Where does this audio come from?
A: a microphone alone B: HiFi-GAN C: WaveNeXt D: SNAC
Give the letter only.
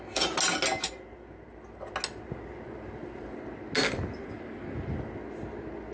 A